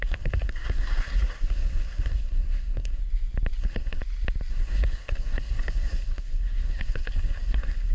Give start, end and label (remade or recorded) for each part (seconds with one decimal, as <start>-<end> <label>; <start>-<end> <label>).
0.0-3.0 remade; 3.0-3.6 recorded; 3.6-4.0 remade; 4.0-4.5 recorded; 4.5-7.9 remade